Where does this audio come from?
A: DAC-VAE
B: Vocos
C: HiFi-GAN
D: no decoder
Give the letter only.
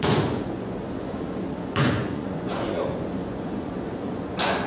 B